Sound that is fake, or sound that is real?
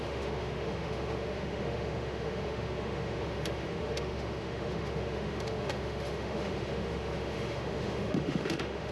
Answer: fake